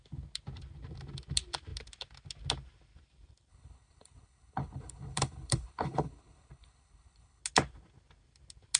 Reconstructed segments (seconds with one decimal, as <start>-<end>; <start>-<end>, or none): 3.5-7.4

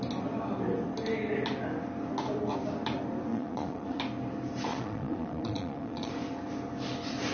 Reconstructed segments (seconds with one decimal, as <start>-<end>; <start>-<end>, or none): 3.3-4.0; 4.7-6.1

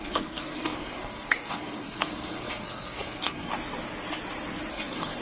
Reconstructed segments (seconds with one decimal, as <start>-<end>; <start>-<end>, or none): 0.0-3.5; 4.7-5.2